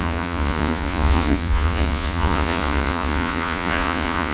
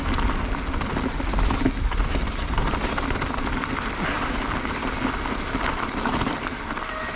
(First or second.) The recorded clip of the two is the second